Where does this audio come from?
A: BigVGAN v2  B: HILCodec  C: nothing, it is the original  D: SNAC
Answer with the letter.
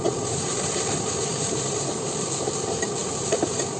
A